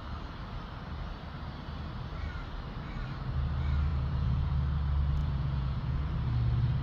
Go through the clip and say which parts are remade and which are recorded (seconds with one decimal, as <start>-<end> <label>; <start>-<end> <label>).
0.0-3.9 recorded; 3.9-4.5 remade; 4.5-5.2 recorded; 5.2-6.1 remade; 6.1-6.8 recorded